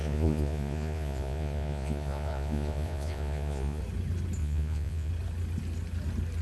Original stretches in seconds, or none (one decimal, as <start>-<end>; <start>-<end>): 3.8-4.4; 5.1-6.4